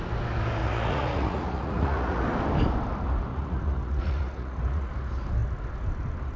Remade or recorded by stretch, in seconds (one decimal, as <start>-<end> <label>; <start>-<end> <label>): 0.0-0.6 recorded; 0.6-2.2 remade; 2.2-3.3 recorded; 3.3-4.9 remade; 4.9-6.4 recorded